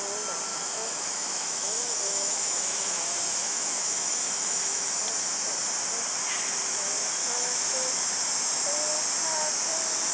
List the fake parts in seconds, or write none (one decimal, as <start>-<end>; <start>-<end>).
0.5-4.9; 7.2-7.9